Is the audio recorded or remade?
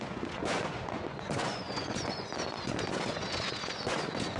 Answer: remade